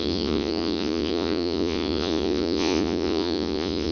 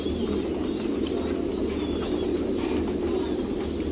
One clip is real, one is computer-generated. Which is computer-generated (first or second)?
first